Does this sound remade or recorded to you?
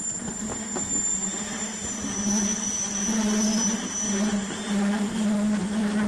recorded